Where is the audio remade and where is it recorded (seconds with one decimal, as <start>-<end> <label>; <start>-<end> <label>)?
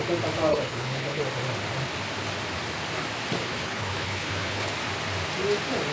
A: 0.0-0.5 recorded; 0.5-1.2 remade; 1.2-3.4 recorded; 3.4-4.7 remade; 4.7-5.9 recorded